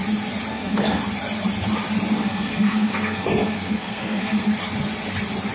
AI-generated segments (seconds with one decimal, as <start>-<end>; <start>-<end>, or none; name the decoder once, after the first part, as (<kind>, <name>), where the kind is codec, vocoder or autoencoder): 0.5-1.0 (codec, SNAC); 2.2-4.5